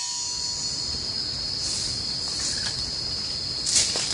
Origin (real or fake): real